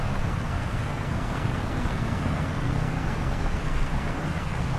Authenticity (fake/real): fake